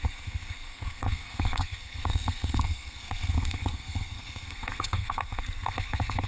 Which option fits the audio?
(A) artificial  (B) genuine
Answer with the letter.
A